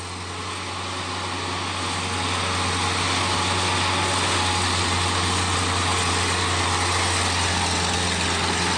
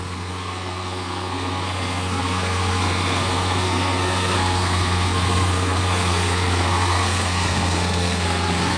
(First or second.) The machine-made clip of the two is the second